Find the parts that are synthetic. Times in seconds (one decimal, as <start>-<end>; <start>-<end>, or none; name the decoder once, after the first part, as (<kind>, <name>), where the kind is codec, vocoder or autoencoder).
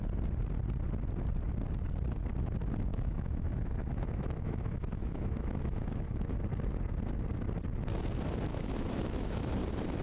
2.9-6.4 (autoencoder, DAC-VAE); 8.5-9.5